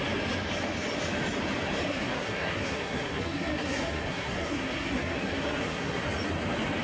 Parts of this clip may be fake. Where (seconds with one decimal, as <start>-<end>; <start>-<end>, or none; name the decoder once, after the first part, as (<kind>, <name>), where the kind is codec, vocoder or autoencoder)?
1.9-6.0 (codec, SNAC)